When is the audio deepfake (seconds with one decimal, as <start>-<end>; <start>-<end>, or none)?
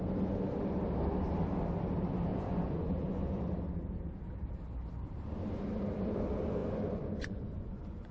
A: 2.3-3.5; 6.6-8.1